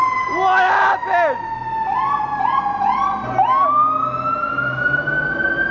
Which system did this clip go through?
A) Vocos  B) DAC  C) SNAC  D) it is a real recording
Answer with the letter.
D